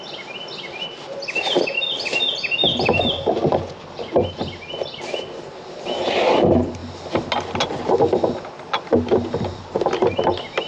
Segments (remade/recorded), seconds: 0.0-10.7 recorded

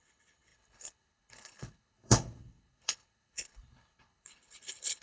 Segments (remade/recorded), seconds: 0.0-5.0 remade

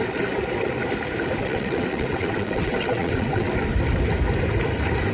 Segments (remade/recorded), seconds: 0.0-1.4 recorded; 1.4-3.5 remade; 3.5-5.1 recorded

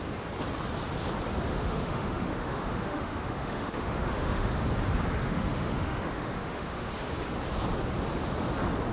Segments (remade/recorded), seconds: 0.0-1.5 recorded; 1.5-4.6 remade; 4.6-5.2 recorded; 5.2-6.9 remade; 6.9-8.9 recorded

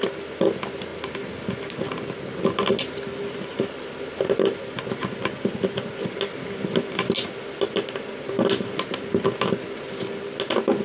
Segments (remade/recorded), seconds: 0.0-10.8 recorded